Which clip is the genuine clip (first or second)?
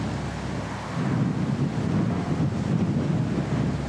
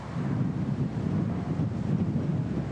first